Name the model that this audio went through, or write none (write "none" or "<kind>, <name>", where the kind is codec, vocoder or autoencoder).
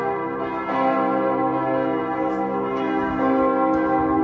none